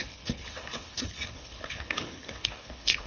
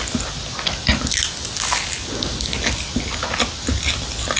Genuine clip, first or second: second